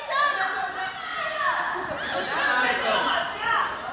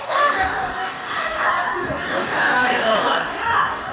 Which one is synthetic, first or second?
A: second